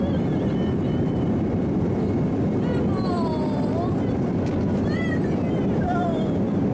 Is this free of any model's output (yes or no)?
no